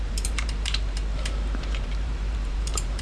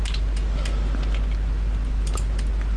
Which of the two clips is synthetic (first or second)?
first